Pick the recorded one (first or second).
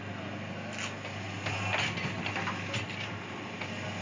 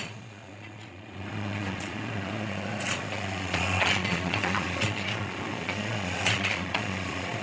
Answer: first